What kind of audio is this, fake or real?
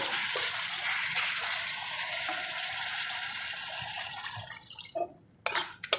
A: real